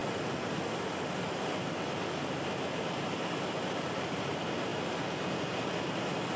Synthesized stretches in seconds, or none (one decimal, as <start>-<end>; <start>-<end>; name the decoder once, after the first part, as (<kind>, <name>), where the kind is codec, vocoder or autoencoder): none